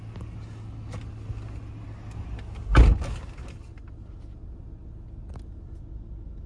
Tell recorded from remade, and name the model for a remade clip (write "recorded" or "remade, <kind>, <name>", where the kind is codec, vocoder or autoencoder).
recorded